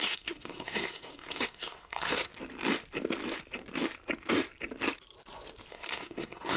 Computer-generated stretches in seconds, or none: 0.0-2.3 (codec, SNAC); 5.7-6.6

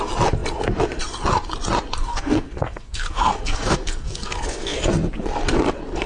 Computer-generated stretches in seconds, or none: 2.1-4.8 (codec, SNAC)

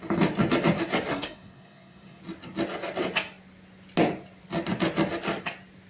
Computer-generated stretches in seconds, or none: 1.1-2.2 (codec, SNAC)

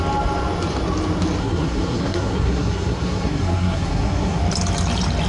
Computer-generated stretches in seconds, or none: 1.4-4.4 (codec, SNAC)

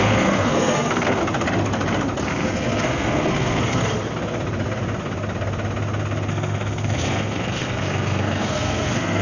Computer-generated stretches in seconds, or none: 0.0-1.2 (codec, SNAC); 2.2-3.8; 6.3-9.2

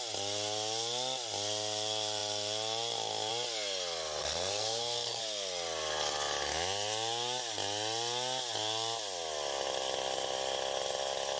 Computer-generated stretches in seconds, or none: 4.2-5.2 (codec, SNAC)